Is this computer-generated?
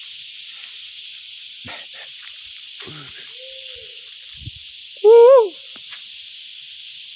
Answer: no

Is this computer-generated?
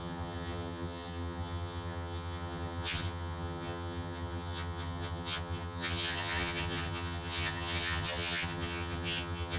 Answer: yes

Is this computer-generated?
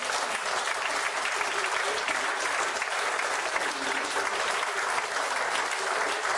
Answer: no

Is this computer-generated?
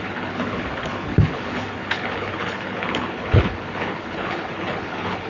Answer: yes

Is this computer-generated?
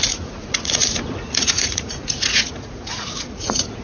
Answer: yes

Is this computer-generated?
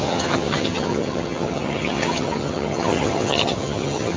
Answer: yes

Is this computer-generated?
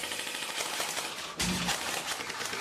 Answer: no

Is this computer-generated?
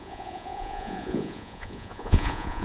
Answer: yes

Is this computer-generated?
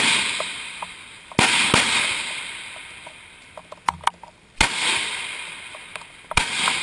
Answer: no